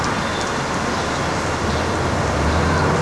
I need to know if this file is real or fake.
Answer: real